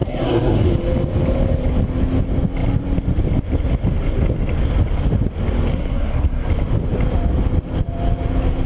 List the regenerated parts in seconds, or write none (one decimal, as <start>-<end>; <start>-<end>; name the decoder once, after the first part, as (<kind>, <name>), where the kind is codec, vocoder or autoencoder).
0.0-0.7 (codec, SNAC); 5.7-6.5